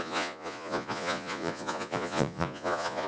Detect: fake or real fake